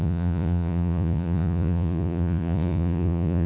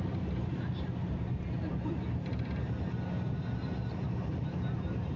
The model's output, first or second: first